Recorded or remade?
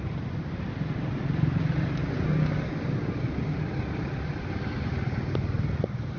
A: recorded